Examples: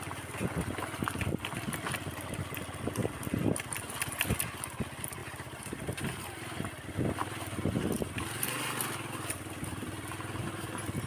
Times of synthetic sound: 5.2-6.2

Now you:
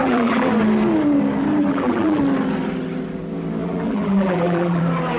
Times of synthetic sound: 0.0-0.5; 1.6-2.2; 3.6-4.8

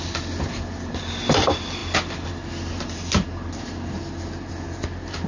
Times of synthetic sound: none

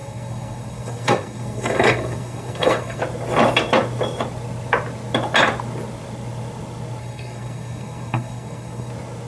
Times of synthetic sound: 0.0-3.0; 7.0-8.9

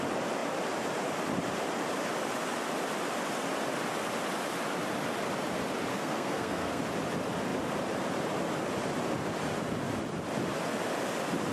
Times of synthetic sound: 5.9-6.8

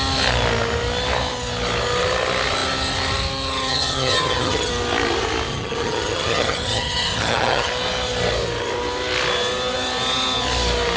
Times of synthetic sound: 3.7-4.7; 5.5-7.7

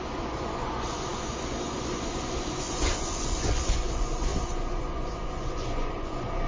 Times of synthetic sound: 0.0-6.5

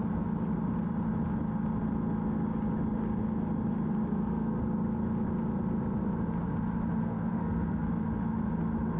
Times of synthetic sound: 4.1-4.6; 7.0-7.9